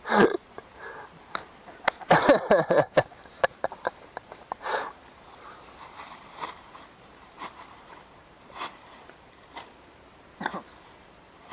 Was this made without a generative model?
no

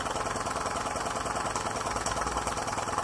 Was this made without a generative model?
yes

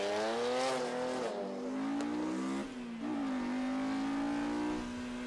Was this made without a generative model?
yes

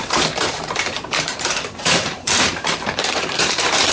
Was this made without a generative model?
no